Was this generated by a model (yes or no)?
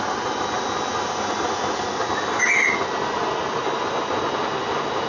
no